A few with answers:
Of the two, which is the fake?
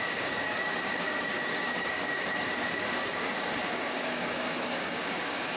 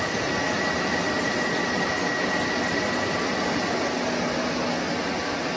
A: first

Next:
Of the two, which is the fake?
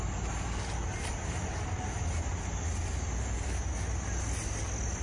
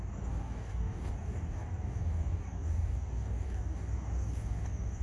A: second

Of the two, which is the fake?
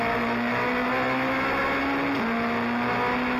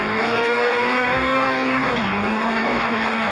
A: second